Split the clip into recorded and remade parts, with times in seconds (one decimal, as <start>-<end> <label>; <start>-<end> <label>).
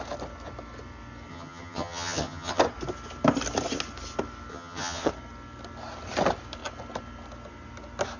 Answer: 0.0-1.3 recorded; 1.3-2.6 remade; 2.6-4.5 recorded; 4.5-5.1 remade; 5.1-8.2 recorded